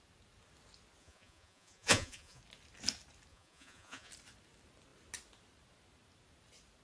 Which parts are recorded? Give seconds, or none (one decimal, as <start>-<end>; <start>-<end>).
0.0-1.0; 2.4-3.3; 4.1-6.8